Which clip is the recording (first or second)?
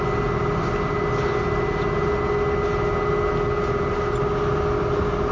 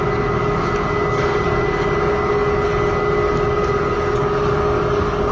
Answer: first